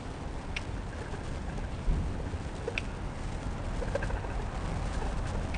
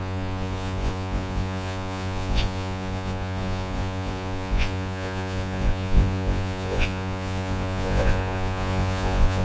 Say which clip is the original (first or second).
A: first